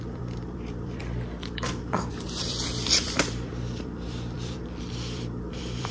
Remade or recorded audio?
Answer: remade